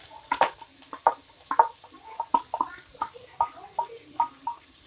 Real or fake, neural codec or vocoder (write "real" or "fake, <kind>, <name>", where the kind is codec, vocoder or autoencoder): real